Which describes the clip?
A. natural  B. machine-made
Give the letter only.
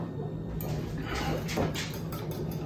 A